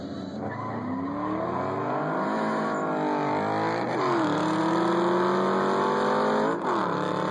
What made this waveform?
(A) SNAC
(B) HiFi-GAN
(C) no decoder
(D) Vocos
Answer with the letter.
C